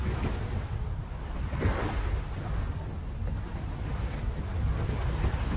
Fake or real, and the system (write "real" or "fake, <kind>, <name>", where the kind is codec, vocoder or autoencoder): real